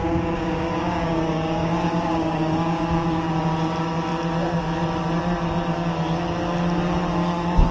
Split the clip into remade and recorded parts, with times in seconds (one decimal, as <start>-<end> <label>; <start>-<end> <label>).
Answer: 0.0-3.3 remade; 3.3-7.2 recorded; 7.2-7.7 remade